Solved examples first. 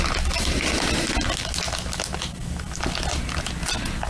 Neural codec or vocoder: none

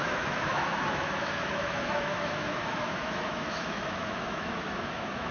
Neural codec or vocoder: autoencoder, DAC-VAE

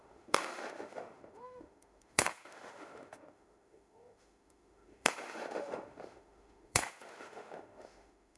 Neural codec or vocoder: autoencoder, DAC-VAE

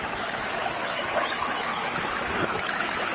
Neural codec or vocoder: autoencoder, DAC-VAE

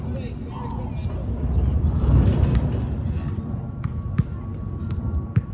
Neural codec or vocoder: none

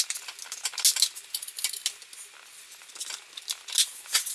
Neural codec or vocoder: none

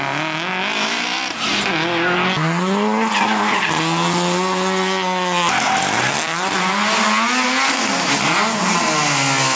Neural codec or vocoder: none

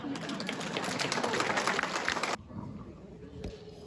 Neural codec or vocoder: none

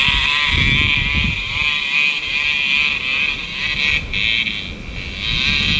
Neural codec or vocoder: none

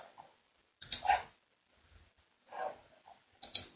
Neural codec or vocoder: none